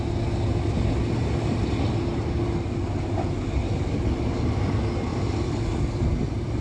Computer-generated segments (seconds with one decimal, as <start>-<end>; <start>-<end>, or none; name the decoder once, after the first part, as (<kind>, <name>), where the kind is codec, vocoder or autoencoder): 5.1-6.0 (vocoder, BigVGAN v2)